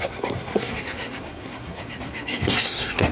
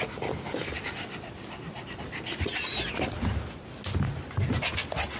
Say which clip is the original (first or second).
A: second